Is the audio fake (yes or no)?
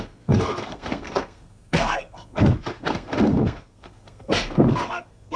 yes